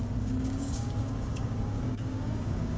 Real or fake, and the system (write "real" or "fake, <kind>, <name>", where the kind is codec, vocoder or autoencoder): fake, codec, DAC